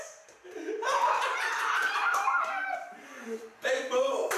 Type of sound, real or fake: fake